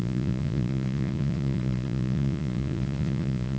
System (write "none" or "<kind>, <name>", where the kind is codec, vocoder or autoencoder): vocoder, Vocos